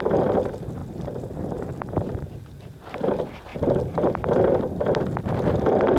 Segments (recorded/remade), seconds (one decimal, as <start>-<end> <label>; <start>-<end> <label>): 0.0-0.8 recorded; 0.8-2.9 remade; 2.9-6.0 recorded